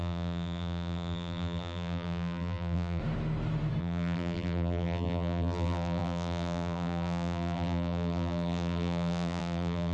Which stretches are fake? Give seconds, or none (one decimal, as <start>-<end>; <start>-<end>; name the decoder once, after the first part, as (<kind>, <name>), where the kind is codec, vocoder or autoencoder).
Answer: 0.0-3.0 (vocoder, BigVGAN v2); 3.8-9.9